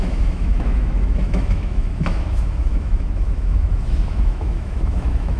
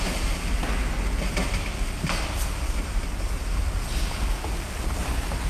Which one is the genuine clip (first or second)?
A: second